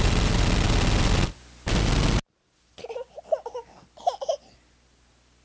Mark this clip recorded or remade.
recorded